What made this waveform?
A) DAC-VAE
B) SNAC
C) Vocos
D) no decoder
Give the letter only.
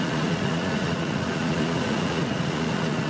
C